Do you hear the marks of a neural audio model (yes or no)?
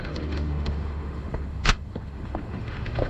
yes